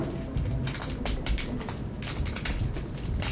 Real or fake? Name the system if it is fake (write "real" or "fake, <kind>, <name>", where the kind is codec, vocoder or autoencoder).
real